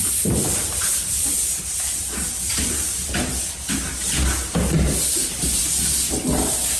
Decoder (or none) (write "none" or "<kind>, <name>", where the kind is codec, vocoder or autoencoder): none